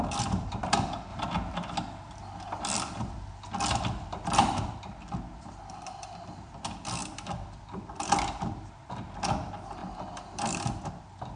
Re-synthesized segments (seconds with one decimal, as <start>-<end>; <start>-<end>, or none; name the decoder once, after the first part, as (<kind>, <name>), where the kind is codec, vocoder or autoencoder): 0.0-11.4 (vocoder, BigVGAN v2)